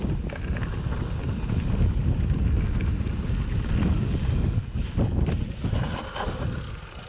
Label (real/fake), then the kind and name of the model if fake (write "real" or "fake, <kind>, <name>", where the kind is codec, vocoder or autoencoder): real